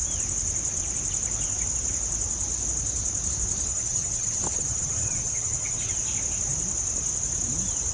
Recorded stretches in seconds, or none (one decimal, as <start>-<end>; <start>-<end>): 0.0-3.7; 5.9-7.9